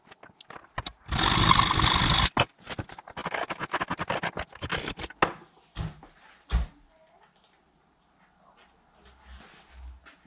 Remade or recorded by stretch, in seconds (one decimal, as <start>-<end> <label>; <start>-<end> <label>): 0.0-10.3 recorded